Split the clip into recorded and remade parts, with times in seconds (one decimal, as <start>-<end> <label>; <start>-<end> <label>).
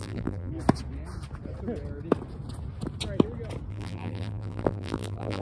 0.0-0.5 remade; 0.5-3.7 recorded; 3.7-5.4 remade